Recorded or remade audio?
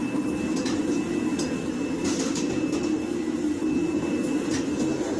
recorded